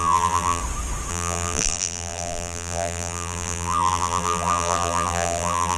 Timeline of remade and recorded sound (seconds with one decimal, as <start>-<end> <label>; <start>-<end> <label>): 0.0-0.6 remade; 0.6-1.1 recorded; 1.1-5.8 remade